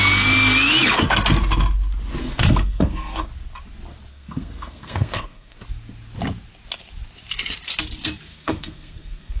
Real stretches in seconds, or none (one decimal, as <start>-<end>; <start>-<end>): 0.0-2.2; 3.3-4.1; 5.6-8.3